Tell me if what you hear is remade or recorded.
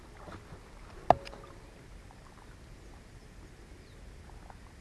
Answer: recorded